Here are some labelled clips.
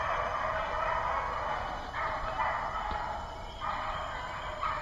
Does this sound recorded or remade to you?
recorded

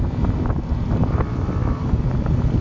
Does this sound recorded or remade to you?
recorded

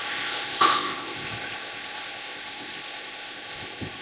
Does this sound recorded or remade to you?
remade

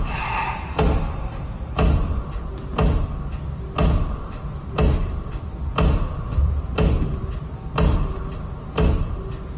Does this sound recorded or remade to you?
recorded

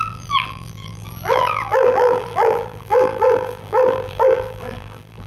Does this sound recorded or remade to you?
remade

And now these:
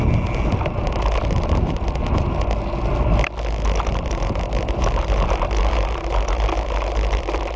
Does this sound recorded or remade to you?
recorded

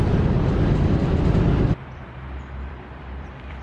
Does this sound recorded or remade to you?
remade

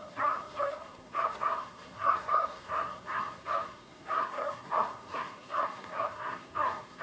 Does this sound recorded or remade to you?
remade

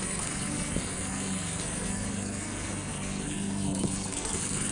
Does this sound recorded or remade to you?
remade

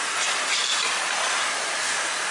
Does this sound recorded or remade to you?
recorded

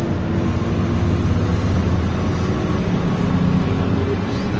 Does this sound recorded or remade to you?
recorded